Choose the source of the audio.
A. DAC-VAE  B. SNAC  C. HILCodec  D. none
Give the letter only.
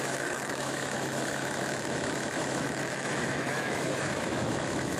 A